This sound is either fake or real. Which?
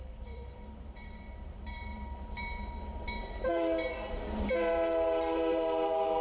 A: fake